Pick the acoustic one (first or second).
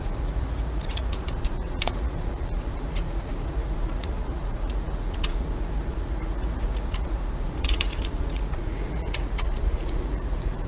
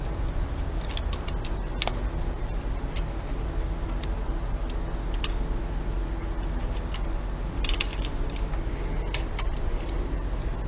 second